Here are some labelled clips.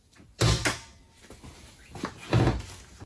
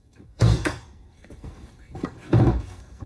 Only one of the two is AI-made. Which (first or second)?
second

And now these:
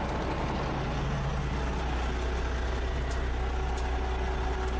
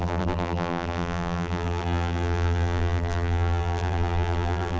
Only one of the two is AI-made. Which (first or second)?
second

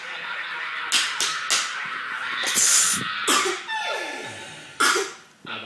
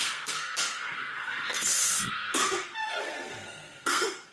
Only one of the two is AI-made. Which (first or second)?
second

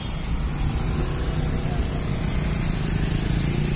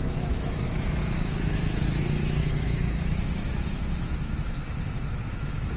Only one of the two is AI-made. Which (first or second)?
second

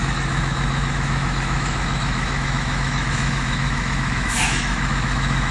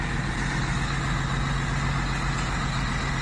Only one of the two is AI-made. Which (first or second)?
first